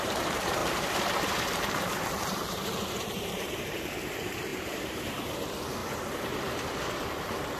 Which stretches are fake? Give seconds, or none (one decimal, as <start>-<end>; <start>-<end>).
0.0-7.6